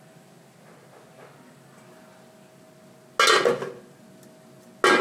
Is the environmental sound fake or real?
real